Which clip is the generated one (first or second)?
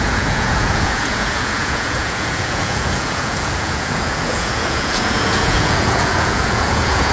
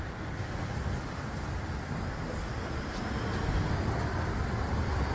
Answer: first